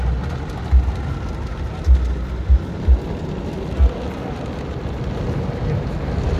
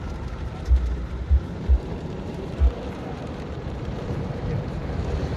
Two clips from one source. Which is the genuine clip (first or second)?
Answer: first